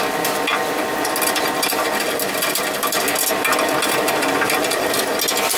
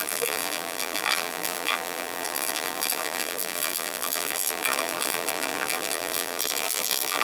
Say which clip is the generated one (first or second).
second